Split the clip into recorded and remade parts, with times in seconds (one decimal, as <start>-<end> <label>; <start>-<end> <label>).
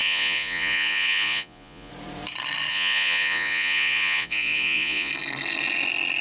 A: 0.0-1.9 remade; 1.9-2.7 recorded; 2.7-5.1 remade; 5.1-6.2 recorded